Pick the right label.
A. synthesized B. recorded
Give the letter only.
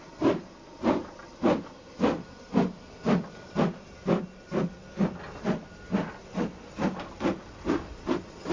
B